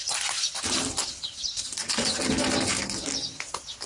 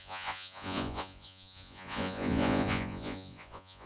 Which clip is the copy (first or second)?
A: second